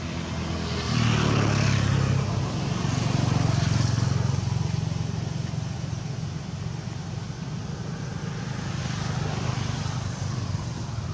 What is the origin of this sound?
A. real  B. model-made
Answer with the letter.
A